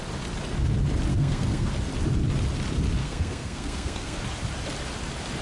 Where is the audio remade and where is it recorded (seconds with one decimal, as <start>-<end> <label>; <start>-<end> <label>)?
0.0-1.1 recorded; 1.1-1.7 remade; 1.7-3.0 recorded; 3.0-4.2 remade; 4.2-5.4 recorded